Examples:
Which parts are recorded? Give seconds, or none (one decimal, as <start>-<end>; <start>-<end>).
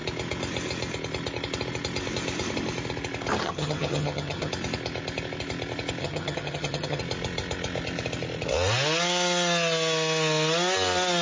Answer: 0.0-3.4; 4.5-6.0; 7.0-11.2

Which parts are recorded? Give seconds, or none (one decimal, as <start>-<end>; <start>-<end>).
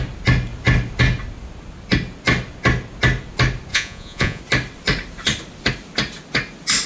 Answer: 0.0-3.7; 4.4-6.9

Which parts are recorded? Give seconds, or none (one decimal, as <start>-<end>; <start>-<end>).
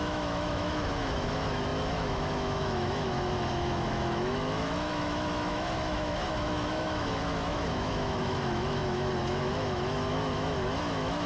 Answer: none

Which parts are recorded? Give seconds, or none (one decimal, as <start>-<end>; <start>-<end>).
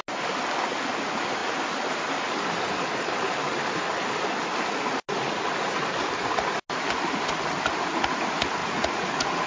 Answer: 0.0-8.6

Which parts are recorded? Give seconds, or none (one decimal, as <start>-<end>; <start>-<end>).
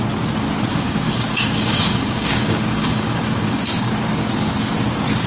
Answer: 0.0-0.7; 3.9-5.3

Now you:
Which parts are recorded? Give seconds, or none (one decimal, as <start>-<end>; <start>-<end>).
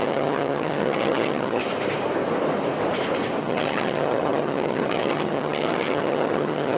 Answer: 1.6-3.4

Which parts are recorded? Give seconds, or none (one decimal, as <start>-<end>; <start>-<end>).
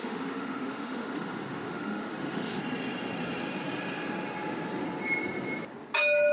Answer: 2.6-6.3